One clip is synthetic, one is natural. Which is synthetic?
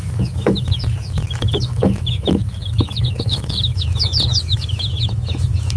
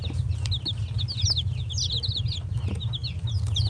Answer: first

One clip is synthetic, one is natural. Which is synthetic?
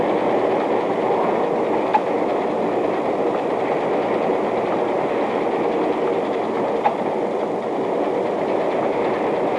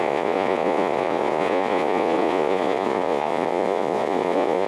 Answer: second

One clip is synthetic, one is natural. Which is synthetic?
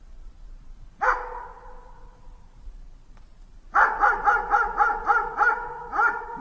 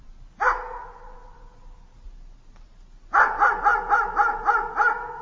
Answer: first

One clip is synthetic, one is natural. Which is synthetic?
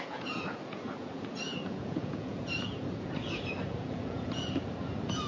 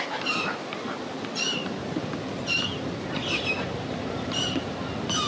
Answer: first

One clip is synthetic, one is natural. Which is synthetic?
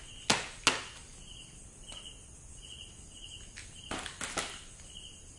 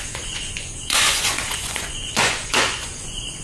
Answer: second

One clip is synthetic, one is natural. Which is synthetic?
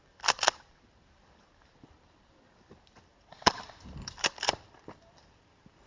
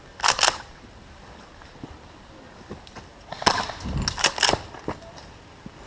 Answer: first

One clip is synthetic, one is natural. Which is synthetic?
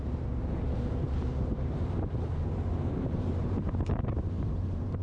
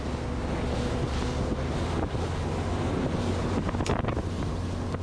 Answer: first